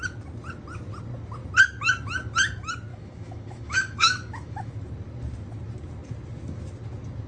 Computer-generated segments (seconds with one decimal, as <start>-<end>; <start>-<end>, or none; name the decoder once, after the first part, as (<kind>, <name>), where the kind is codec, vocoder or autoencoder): 2.9-4.7 (autoencoder, DAC-VAE)